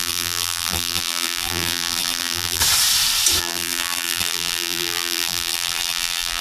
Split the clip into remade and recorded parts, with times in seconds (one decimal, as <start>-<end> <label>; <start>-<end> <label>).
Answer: 0.0-2.6 remade; 2.6-3.4 recorded; 3.4-6.4 remade

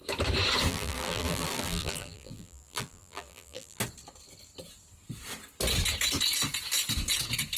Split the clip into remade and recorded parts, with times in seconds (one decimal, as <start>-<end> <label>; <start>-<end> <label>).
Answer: 0.0-0.7 recorded; 0.7-3.8 remade; 3.8-7.6 recorded

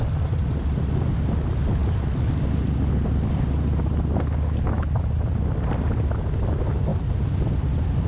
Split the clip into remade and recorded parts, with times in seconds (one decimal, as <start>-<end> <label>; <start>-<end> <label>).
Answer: 0.0-6.9 recorded; 6.9-7.4 remade; 7.4-8.1 recorded